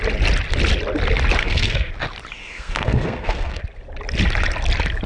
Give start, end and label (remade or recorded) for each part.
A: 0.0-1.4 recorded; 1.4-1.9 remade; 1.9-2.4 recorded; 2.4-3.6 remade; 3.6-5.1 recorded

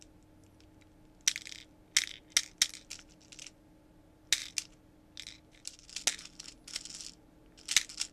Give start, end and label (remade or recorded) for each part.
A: 0.0-8.1 recorded

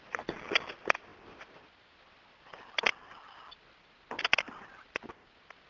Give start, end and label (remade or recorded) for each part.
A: 0.0-5.7 recorded

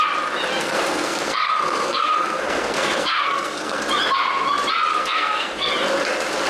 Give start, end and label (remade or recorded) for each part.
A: 0.0-0.6 recorded; 0.6-3.8 remade; 3.8-4.9 recorded; 4.9-5.7 remade; 5.7-6.5 recorded

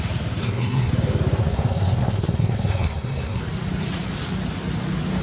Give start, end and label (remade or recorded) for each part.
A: 0.0-0.4 recorded; 0.4-0.9 remade; 0.9-1.4 recorded; 1.4-3.4 remade; 3.4-5.2 recorded

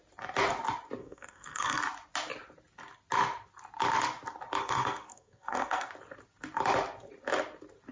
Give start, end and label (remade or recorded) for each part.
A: 0.0-1.0 recorded; 1.0-1.8 remade; 1.8-4.6 recorded; 4.6-5.9 remade; 5.9-7.9 recorded